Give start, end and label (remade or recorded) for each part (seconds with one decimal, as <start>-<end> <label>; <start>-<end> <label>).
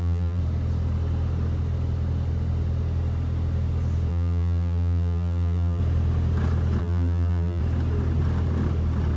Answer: 0.0-0.4 remade; 0.4-4.1 recorded; 4.1-5.8 remade; 5.8-6.8 recorded; 6.8-7.6 remade; 7.6-9.2 recorded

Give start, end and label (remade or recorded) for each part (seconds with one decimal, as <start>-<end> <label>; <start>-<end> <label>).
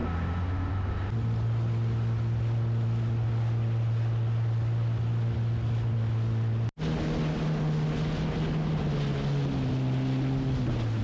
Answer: 0.0-11.0 recorded